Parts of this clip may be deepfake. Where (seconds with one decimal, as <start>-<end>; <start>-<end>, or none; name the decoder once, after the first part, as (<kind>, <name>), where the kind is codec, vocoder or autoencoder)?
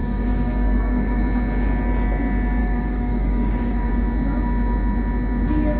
0.0-1.2 (codec, DAC); 2.6-3.9